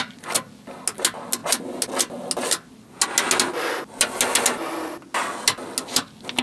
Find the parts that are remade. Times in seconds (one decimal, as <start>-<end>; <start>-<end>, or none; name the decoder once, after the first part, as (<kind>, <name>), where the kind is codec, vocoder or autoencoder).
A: none

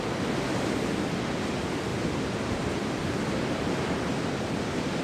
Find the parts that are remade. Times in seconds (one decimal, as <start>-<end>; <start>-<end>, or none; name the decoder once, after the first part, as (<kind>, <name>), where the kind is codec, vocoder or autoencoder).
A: none

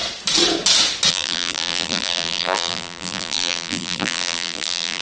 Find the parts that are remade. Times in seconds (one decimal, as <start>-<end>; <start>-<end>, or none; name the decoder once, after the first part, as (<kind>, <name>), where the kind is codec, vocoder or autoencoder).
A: 1.1-5.0 (vocoder, BigVGAN v2)

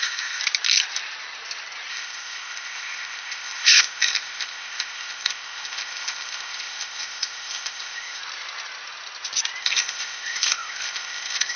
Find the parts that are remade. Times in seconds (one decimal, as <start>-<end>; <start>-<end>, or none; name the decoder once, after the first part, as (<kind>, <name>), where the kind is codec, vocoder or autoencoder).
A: 0.0-0.4 (codec, ZipCodec); 1.9-8.2; 9.6-11.6